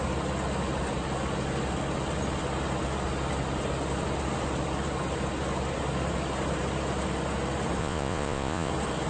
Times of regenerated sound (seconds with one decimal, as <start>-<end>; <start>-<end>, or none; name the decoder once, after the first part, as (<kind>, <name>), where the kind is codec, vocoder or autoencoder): 7.8-8.7 (vocoder, Vocos)